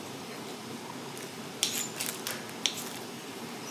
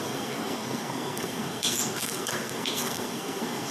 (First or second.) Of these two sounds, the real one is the first